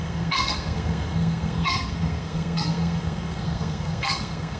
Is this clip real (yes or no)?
no